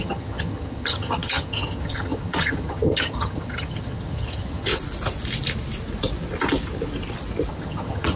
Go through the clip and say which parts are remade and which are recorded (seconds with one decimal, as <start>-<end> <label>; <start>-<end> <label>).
0.0-4.7 remade; 4.7-7.5 recorded; 7.5-8.2 remade